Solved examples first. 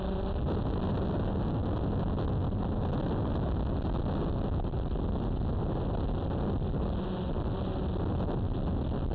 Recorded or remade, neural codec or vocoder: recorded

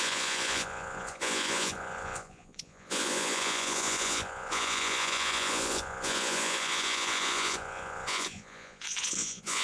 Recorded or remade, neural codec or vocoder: remade, vocoder, Vocos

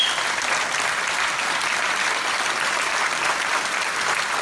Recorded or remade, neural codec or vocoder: recorded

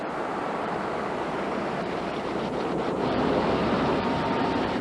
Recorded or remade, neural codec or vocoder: remade, vocoder, BigVGAN v2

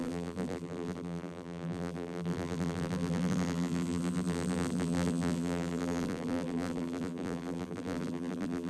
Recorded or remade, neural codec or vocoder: remade, vocoder, BigVGAN v2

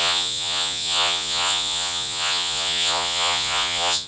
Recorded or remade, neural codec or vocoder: remade, vocoder, Vocos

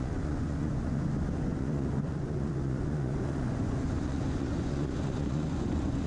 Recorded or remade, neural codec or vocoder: remade, vocoder, Vocos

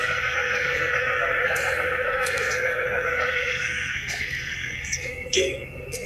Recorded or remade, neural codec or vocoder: remade, codec, SNAC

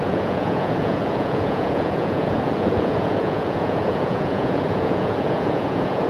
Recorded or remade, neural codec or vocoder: remade, vocoder, Vocos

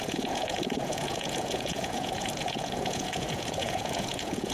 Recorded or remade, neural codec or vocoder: remade, vocoder, Vocos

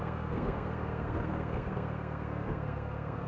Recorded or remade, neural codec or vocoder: remade, codec, SNAC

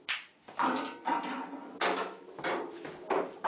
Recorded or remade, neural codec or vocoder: recorded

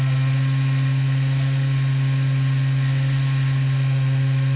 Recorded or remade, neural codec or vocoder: recorded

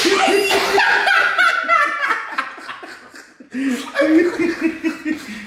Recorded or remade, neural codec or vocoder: remade, vocoder, BigVGAN v2